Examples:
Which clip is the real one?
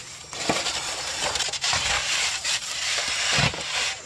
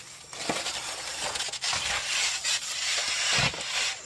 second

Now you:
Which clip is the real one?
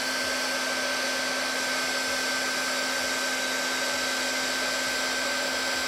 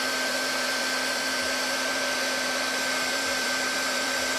first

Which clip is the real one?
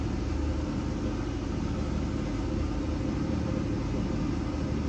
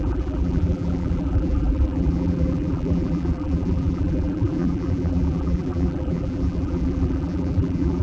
first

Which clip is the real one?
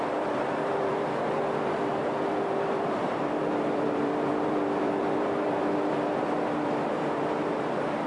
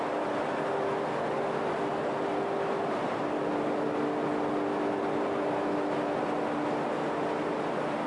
second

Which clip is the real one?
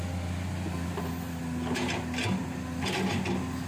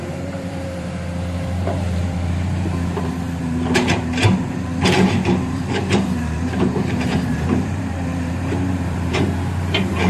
first